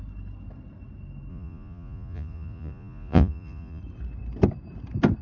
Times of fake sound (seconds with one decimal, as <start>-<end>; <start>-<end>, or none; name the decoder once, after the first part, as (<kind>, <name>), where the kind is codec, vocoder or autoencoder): 1.3-3.8 (vocoder, Vocos)